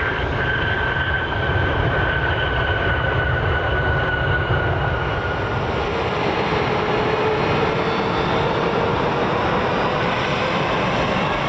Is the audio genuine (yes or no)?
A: yes